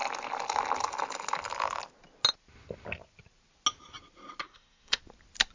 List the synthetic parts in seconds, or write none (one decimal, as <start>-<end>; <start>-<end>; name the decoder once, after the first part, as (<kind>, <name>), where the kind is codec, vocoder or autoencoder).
4.4-5.0 (codec, SNAC)